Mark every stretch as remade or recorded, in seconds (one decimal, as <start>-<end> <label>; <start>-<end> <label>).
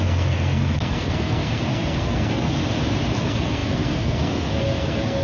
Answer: 0.0-2.6 remade; 2.6-3.2 recorded; 3.2-5.2 remade